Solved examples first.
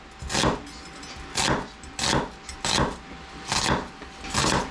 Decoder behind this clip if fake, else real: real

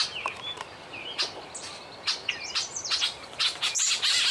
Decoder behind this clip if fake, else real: real